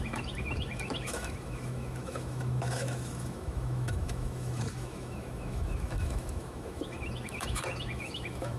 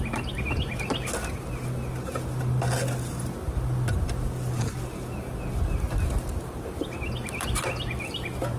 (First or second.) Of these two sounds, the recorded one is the second